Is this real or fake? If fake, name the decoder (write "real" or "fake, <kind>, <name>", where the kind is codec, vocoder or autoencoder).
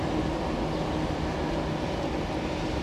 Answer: real